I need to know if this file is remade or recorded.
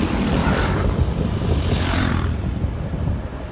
remade